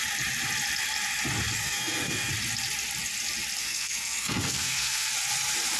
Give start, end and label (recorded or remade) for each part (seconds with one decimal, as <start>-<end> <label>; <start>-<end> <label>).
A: 0.0-1.6 recorded; 1.6-2.3 remade; 2.3-3.6 recorded; 3.6-5.1 remade; 5.1-5.8 recorded